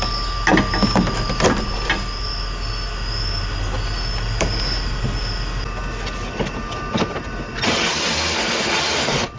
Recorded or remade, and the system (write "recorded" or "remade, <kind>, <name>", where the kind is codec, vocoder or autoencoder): recorded